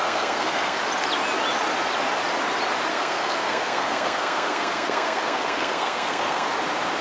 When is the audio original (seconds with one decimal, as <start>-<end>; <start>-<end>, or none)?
0.8-2.9; 6.5-7.0